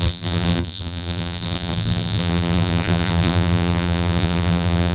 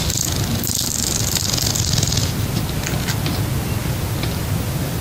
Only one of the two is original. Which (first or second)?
second